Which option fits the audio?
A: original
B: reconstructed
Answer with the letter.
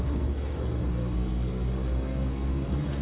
B